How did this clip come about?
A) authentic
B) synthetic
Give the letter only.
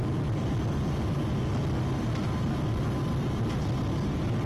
A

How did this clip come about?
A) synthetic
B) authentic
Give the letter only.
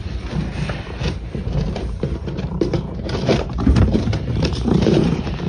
A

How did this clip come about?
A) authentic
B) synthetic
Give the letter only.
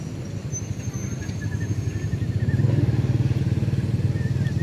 A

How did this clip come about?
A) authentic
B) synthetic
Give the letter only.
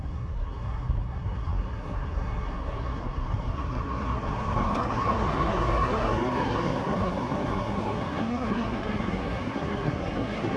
B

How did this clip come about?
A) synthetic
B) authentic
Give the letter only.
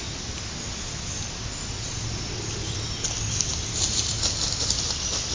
B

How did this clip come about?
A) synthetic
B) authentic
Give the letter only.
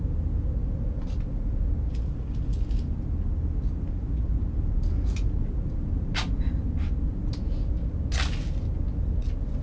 B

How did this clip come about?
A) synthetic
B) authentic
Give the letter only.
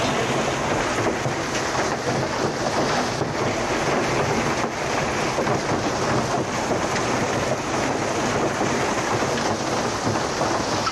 B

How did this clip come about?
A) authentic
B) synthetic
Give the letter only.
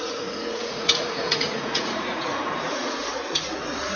B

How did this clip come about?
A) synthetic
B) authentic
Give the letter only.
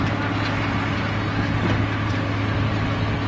B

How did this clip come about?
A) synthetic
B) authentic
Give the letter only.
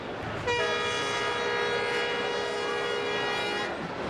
B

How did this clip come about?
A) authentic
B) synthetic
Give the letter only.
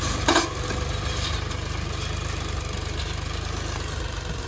A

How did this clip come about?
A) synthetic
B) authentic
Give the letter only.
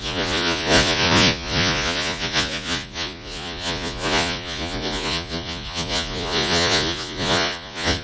A